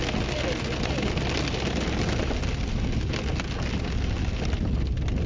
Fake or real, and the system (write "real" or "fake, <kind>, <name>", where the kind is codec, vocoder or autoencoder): real